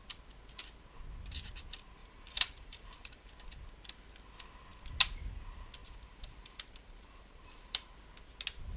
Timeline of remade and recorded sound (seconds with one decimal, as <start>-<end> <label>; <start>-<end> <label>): 0.0-2.0 recorded; 2.0-3.3 remade; 3.3-5.8 recorded; 5.8-7.9 remade; 7.9-8.8 recorded